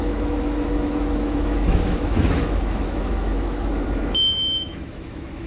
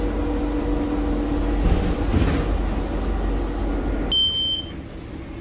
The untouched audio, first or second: second